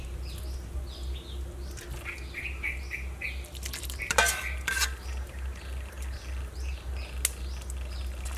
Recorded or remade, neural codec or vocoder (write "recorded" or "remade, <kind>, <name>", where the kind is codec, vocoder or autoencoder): recorded